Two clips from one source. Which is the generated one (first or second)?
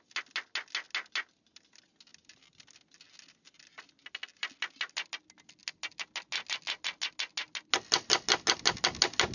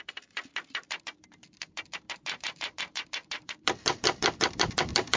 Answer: second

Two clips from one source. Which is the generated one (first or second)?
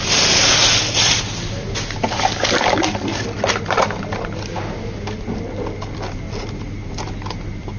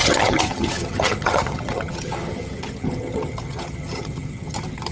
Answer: second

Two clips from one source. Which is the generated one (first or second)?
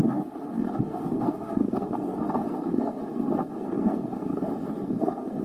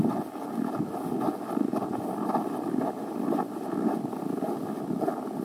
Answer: first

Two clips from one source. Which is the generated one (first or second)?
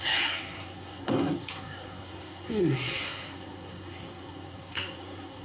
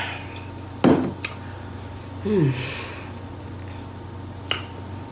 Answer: first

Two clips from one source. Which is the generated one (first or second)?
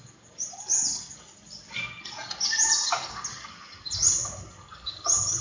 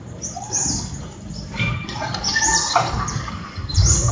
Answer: second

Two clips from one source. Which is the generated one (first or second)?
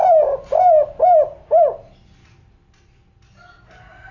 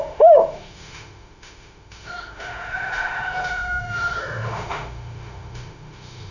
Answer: second